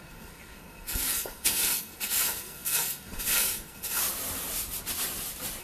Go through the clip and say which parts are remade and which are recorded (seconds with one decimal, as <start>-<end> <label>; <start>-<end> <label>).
0.0-4.0 remade; 4.0-5.6 recorded

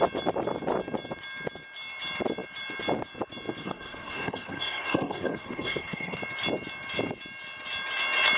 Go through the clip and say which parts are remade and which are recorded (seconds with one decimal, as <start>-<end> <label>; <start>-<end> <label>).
0.0-3.6 recorded; 3.6-6.2 remade; 6.2-8.4 recorded

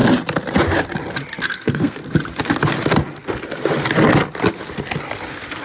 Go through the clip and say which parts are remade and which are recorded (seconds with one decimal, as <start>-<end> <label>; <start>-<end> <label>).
0.0-1.4 recorded; 1.4-2.0 remade; 2.0-5.6 recorded

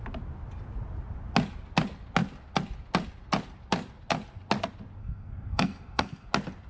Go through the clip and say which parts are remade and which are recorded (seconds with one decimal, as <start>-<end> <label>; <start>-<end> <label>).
0.0-5.0 recorded; 5.0-6.3 remade; 6.3-6.7 recorded

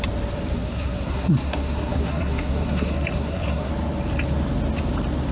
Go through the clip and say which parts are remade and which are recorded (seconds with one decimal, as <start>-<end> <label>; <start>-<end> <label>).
0.0-0.5 recorded; 0.5-3.7 remade; 3.7-5.3 recorded

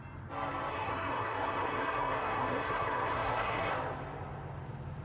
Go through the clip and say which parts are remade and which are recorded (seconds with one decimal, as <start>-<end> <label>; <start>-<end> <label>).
0.0-0.7 recorded; 0.7-3.7 remade; 3.7-5.0 recorded